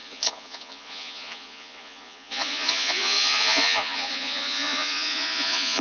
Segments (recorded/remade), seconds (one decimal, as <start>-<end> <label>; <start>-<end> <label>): 0.0-5.8 remade